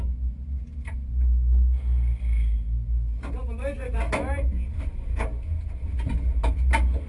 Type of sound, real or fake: real